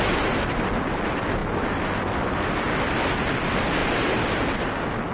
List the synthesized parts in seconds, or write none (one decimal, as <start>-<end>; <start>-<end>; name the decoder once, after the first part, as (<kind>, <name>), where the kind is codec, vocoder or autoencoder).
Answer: none

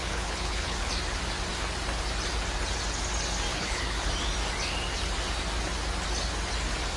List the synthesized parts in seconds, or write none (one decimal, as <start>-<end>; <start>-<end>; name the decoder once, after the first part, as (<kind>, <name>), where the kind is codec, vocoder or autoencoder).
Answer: 0.0-0.9 (codec, HILCodec); 3.5-4.1

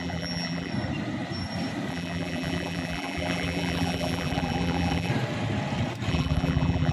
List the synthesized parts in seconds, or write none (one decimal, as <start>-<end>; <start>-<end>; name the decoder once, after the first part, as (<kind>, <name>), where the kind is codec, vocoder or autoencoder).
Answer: 0.0-0.7 (vocoder, BigVGAN v2); 1.9-5.1; 6.1-6.9

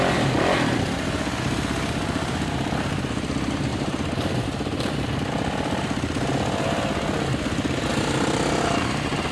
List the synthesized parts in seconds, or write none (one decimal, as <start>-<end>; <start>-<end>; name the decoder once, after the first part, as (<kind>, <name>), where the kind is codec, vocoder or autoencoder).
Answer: 3.7-4.4 (vocoder, BigVGAN v2)